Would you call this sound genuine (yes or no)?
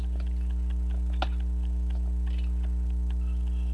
yes